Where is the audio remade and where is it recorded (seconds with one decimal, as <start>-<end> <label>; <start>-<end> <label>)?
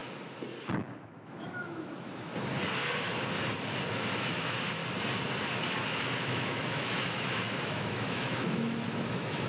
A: 0.0-0.7 recorded; 0.7-2.3 remade; 2.3-3.9 recorded; 3.9-4.8 remade; 4.8-5.8 recorded; 5.8-9.5 remade